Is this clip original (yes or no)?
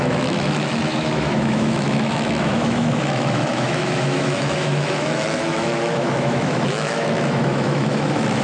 no